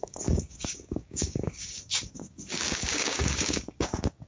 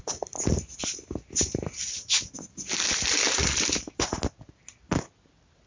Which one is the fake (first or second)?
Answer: first